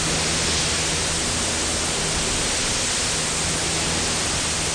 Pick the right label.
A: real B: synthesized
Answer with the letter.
A